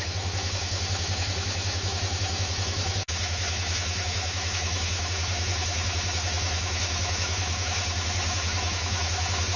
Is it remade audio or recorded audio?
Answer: remade